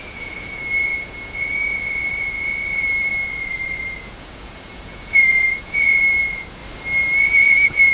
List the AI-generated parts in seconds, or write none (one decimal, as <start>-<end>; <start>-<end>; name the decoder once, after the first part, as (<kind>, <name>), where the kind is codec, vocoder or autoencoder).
0.0-6.6 (vocoder, Vocos); 7.2-7.9